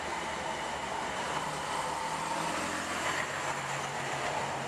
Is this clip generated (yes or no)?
no